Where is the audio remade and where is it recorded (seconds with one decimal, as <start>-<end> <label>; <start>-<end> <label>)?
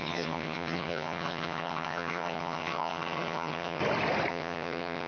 0.0-3.8 remade; 3.8-4.3 recorded; 4.3-5.1 remade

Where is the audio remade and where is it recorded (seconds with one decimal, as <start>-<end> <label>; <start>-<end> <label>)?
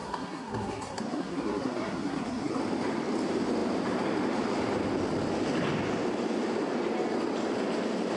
0.0-2.6 remade; 2.6-8.2 recorded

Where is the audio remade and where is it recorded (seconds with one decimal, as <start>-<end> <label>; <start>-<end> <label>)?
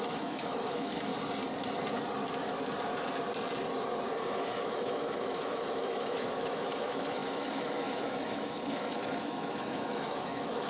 0.0-1.1 remade; 1.1-4.4 recorded; 4.4-10.7 remade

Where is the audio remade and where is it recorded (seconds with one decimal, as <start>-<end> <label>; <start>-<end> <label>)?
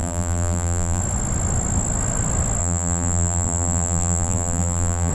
0.0-1.0 remade; 1.0-2.6 recorded; 2.6-5.1 remade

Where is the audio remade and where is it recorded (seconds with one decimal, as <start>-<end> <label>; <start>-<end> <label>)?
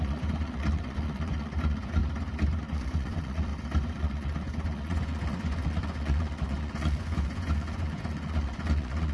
0.0-2.0 remade; 2.0-2.6 recorded; 2.6-3.5 remade; 3.5-4.0 recorded; 4.0-9.1 remade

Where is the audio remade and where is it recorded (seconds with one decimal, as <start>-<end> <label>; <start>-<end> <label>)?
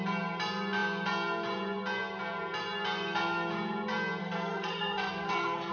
0.0-4.2 recorded; 4.2-5.7 remade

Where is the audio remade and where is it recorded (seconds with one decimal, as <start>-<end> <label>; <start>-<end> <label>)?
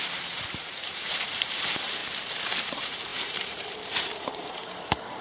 0.0-2.0 remade; 2.0-2.6 recorded; 2.6-5.2 remade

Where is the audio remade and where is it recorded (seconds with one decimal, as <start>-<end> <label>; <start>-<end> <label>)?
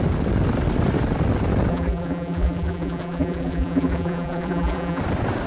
0.0-1.7 recorded; 1.7-5.0 remade; 5.0-5.5 recorded